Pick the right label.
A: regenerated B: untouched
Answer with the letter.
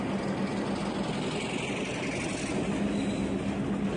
B